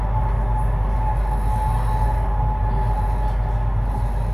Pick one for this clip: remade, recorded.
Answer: recorded